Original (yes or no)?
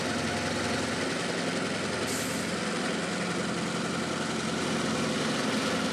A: yes